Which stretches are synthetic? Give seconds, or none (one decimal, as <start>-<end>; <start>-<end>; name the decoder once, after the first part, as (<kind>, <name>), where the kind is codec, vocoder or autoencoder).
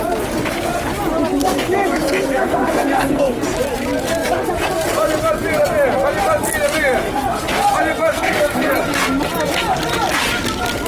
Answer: 1.4-3.4 (codec, SNAC); 8.1-8.7